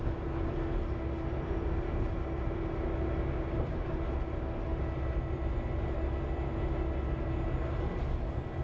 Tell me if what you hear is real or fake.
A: real